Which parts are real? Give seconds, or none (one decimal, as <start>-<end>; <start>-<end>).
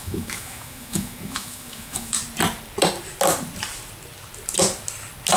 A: 2.2-5.4